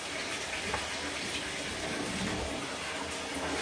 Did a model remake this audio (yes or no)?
no